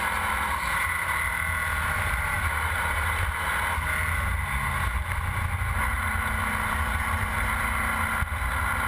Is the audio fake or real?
real